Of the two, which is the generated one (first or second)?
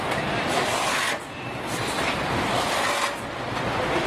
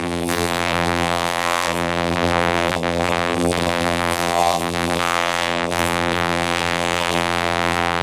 second